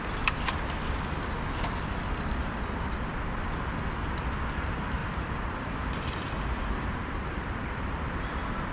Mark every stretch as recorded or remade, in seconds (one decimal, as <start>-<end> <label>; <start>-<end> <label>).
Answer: 0.0-2.4 recorded; 2.4-3.1 remade; 3.1-5.0 recorded; 5.0-8.1 remade; 8.1-8.7 recorded